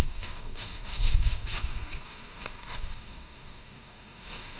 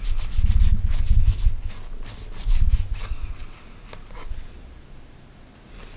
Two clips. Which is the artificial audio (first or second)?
first